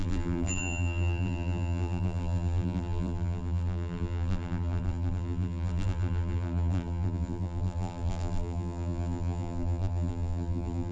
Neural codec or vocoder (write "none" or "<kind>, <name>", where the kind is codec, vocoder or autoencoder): vocoder, BigVGAN v2